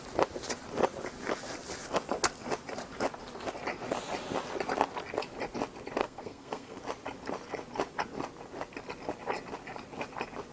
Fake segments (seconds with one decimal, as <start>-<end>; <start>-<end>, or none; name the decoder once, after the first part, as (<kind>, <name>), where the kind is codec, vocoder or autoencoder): 6.0-6.8 (codec, SNAC)